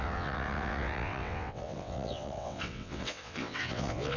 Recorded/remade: remade